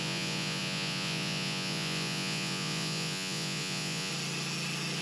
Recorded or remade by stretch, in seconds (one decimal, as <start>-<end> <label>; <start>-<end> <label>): 0.0-4.1 remade; 4.1-5.0 recorded